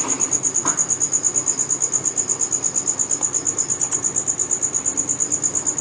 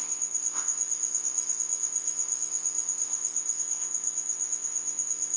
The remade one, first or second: second